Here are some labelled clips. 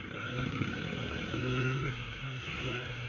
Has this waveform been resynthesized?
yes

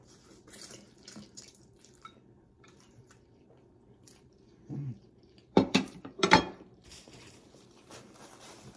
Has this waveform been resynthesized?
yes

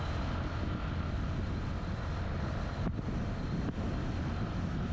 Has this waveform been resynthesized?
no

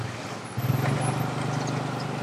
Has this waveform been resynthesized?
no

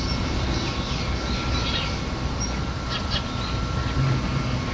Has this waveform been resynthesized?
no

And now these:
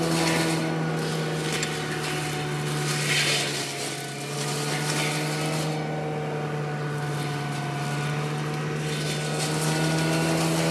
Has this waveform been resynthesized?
no